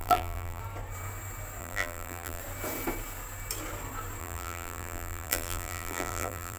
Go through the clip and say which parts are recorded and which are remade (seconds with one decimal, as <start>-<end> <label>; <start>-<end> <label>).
0.0-0.6 remade; 0.6-1.6 recorded; 1.6-2.4 remade; 2.4-4.2 recorded; 4.2-6.6 remade